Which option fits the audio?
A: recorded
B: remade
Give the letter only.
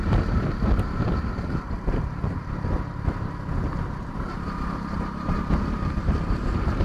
B